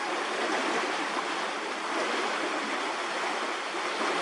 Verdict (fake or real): real